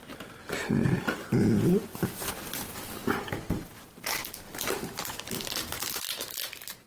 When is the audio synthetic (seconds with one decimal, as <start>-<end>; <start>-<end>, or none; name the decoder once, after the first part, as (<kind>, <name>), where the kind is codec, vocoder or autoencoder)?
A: none